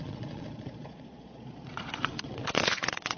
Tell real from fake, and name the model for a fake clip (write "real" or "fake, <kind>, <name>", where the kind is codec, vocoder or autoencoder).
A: fake, vocoder, Vocos